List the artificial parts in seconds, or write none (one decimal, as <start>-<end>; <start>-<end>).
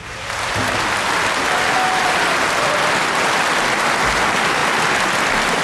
none